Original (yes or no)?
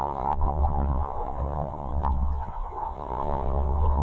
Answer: no